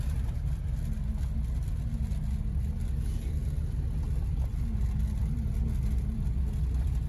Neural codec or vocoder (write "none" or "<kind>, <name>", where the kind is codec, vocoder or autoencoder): none